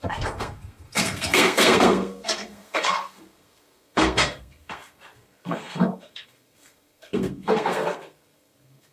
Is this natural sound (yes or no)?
no